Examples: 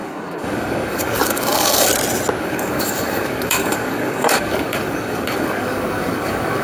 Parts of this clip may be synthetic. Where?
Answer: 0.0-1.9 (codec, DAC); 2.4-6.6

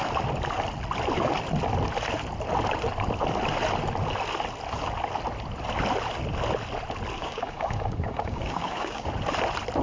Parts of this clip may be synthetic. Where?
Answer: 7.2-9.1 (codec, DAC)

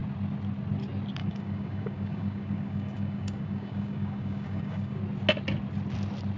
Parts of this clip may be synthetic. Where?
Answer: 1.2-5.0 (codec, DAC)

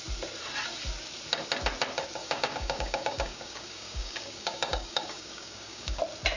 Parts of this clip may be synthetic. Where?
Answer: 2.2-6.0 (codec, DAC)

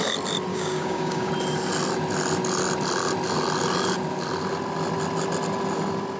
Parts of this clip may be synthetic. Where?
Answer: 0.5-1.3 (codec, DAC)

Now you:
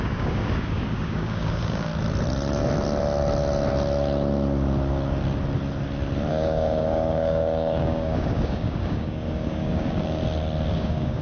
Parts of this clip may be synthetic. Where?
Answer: 0.0-1.9 (codec, DAC); 6.3-10.2; 10.7-11.2